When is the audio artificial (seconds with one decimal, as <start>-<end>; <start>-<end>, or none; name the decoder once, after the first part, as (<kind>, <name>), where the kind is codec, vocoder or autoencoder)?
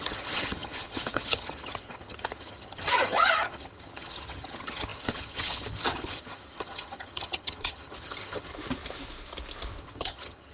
0.0-8.5 (vocoder, HiFi-GAN); 9.8-10.5